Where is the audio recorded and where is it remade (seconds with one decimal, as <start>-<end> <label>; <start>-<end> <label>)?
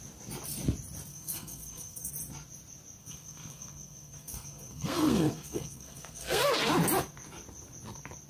0.0-1.1 recorded; 1.1-2.1 remade; 2.1-3.0 recorded; 3.0-6.4 remade; 6.4-8.3 recorded